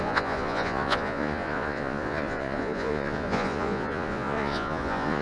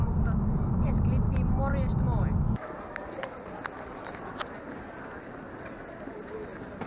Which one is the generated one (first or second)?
first